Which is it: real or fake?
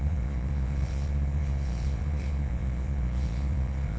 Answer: fake